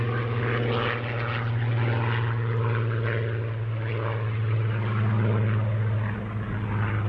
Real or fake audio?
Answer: real